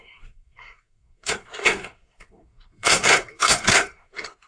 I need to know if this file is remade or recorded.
remade